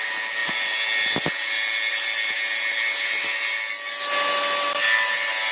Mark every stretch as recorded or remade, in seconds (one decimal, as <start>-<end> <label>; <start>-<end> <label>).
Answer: 0.0-5.5 recorded